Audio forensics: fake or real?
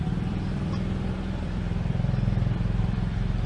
fake